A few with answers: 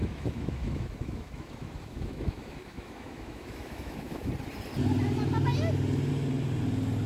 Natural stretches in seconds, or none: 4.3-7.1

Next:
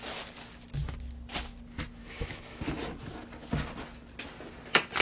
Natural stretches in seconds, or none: 0.0-2.0; 2.6-5.0